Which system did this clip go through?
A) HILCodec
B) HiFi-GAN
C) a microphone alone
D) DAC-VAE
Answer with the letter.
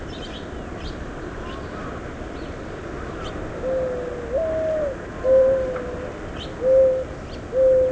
C